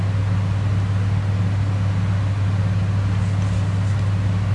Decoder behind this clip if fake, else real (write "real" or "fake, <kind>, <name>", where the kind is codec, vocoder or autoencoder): real